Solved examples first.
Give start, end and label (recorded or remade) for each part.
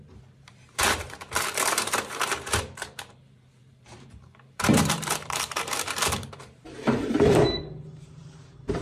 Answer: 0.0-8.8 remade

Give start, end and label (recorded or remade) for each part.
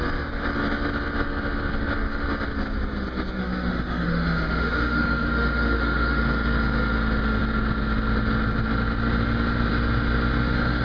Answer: 0.0-3.4 recorded; 3.4-6.2 remade; 6.2-10.8 recorded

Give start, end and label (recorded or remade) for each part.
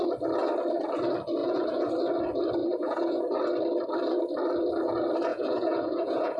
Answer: 0.0-1.4 recorded; 1.4-1.9 remade; 1.9-2.6 recorded; 2.6-3.3 remade; 3.3-5.3 recorded; 5.3-6.4 remade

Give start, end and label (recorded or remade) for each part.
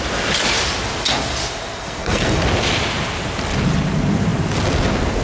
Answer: 0.0-1.8 recorded; 1.8-2.4 remade; 2.4-5.2 recorded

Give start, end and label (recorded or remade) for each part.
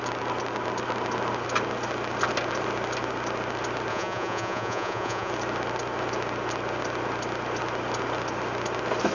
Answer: 0.0-3.9 recorded; 3.9-5.3 remade; 5.3-9.1 recorded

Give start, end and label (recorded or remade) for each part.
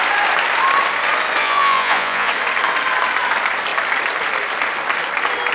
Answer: 0.0-1.4 recorded; 1.4-2.3 remade; 2.3-5.5 recorded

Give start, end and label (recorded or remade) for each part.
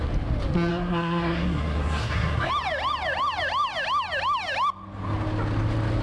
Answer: 0.0-0.7 recorded; 0.7-2.5 remade; 2.5-6.0 recorded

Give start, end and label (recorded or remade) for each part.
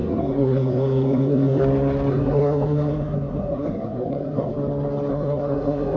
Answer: 0.0-1.6 remade; 1.6-2.1 recorded; 2.1-4.5 remade; 4.5-5.1 recorded; 5.1-6.0 remade